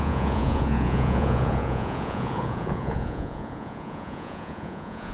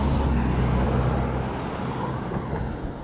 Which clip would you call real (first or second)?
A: second